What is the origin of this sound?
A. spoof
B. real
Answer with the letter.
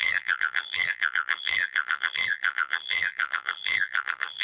A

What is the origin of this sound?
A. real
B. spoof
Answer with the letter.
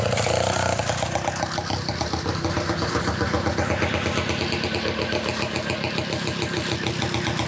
A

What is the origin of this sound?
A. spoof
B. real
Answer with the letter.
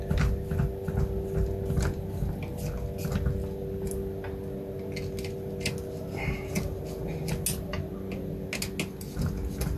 B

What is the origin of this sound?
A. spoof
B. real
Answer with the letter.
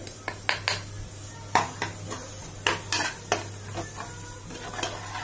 B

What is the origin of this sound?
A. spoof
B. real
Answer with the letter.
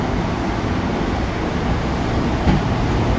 B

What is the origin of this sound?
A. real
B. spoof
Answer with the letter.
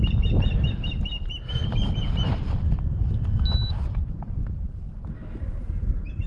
A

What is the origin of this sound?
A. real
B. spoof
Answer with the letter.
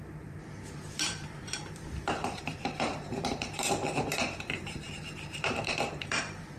B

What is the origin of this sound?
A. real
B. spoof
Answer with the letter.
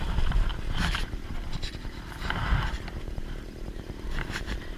B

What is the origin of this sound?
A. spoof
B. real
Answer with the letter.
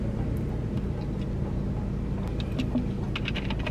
B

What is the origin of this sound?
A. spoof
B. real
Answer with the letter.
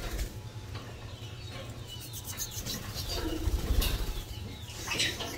A